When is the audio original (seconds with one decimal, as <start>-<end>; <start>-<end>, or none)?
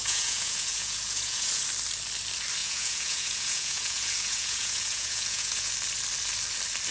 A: 1.6-2.6; 5.7-6.9